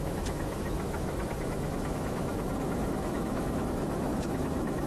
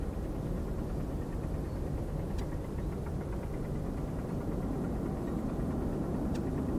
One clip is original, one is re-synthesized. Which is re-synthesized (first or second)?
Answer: first